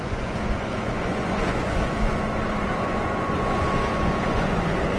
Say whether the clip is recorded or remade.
remade